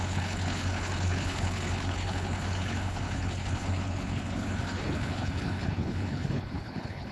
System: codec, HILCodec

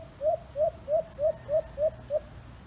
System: none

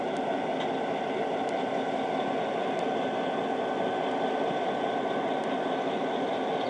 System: none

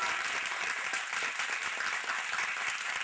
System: none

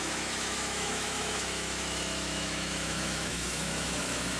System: autoencoder, DAC-VAE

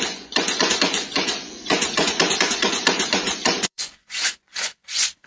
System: vocoder, Vocos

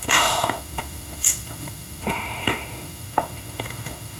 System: autoencoder, DAC-VAE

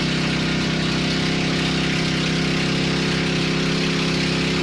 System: none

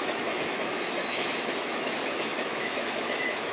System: autoencoder, DAC-VAE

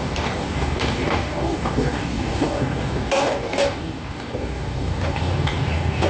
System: codec, DAC